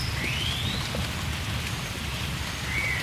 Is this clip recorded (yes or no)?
yes